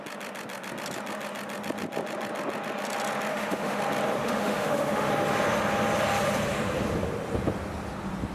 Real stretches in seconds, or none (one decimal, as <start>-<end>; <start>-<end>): 0.0-3.3; 3.8-4.2; 5.1-8.3